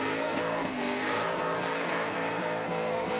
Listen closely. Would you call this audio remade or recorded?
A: remade